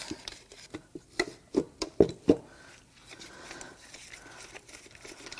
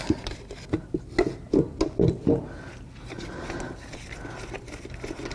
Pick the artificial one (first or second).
first